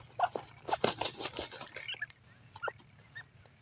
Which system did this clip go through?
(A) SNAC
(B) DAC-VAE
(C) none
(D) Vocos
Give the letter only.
C